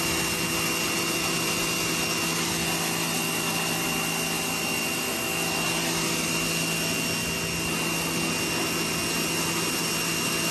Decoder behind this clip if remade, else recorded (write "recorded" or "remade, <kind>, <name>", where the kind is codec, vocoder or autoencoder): recorded